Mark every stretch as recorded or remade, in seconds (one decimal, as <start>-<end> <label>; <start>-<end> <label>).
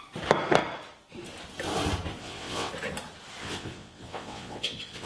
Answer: 0.0-2.2 recorded; 2.2-2.7 remade; 2.7-3.4 recorded; 3.4-5.1 remade